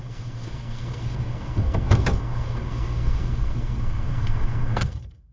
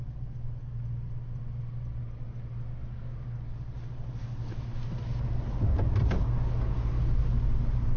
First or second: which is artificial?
first